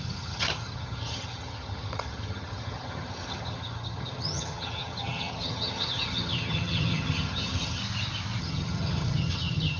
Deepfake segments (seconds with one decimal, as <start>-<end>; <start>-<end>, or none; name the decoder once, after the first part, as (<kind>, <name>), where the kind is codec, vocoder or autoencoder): 0.0-7.8 (vocoder, HiFi-GAN); 8.4-9.8